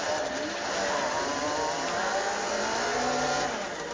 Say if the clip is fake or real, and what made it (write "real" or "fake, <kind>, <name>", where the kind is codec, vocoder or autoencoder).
real